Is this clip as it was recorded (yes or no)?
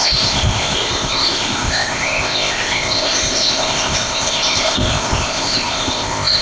no